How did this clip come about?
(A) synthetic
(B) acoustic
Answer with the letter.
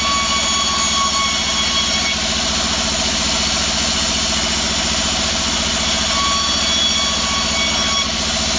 B